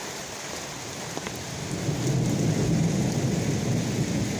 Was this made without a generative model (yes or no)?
yes